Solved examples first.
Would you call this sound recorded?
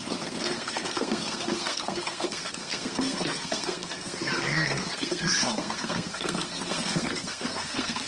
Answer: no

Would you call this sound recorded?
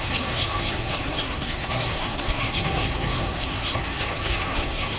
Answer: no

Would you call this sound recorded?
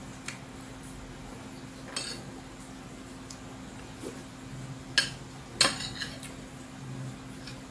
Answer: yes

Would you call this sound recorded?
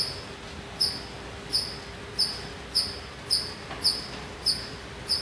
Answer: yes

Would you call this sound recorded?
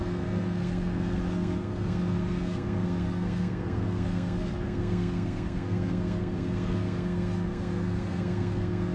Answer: no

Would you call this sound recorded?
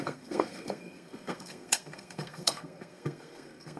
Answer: no